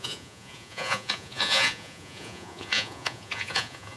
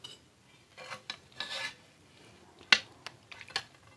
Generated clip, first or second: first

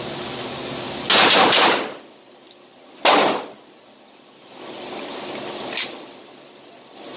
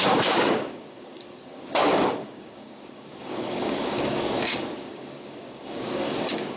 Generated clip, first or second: second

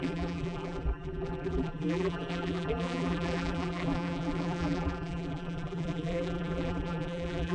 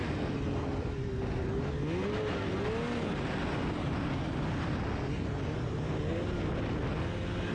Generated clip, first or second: first